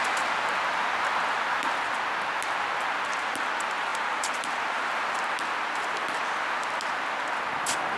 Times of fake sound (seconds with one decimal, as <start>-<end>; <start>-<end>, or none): 3.9-5.0